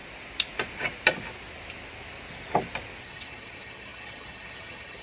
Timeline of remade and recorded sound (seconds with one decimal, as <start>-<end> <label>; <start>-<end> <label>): 0.0-3.0 recorded; 3.0-5.0 remade